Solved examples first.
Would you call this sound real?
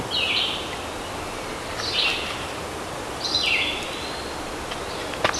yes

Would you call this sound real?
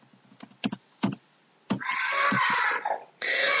yes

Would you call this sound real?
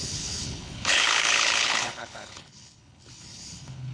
no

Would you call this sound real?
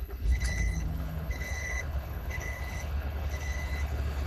no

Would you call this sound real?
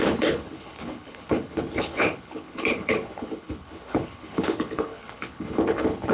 no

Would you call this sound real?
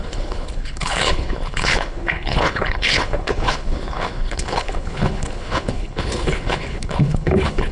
no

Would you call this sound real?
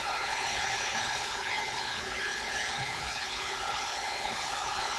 no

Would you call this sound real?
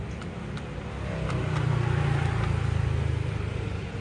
yes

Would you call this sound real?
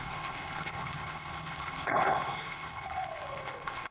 no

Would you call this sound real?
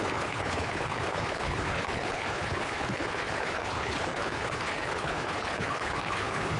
no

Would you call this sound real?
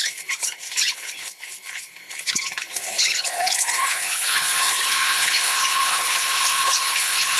no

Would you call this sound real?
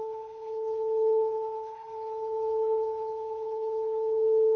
no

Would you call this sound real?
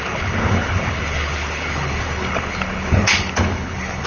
no